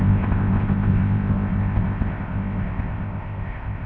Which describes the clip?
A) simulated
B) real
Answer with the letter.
A